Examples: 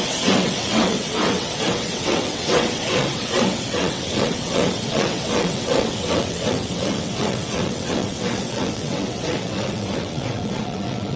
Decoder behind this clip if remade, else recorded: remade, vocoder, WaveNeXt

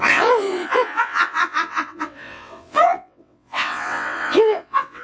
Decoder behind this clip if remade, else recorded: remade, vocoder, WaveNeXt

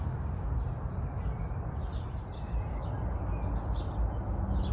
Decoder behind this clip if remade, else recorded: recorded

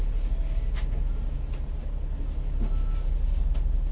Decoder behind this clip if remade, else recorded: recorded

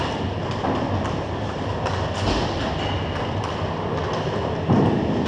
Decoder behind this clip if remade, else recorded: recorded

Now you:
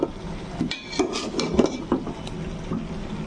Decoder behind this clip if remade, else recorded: recorded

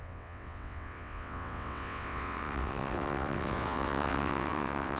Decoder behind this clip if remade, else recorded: remade, vocoder, WaveNeXt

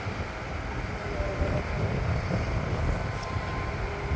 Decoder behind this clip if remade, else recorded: recorded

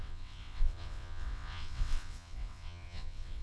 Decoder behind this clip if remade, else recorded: remade, vocoder, WaveNeXt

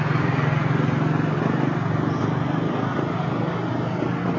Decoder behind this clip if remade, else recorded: recorded